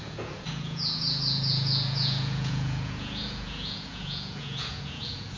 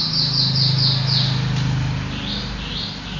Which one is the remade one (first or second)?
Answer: first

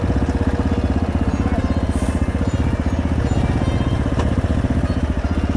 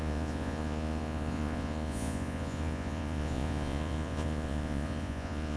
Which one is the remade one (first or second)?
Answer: second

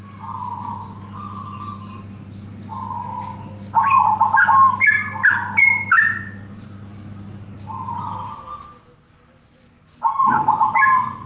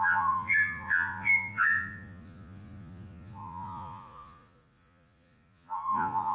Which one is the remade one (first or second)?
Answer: second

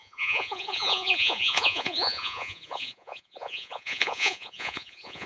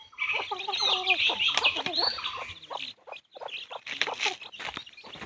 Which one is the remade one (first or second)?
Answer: first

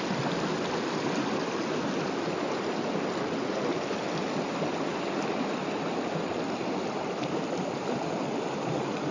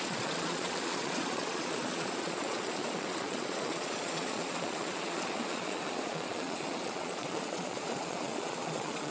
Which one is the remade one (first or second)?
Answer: second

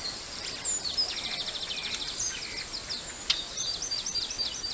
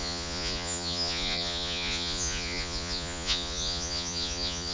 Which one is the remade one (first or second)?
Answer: second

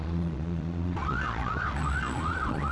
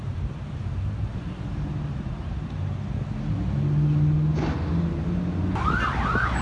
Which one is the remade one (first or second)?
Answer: first